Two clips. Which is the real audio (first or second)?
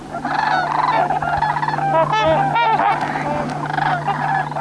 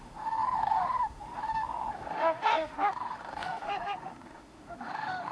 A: first